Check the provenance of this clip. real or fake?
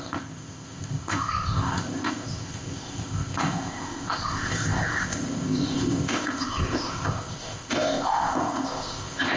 fake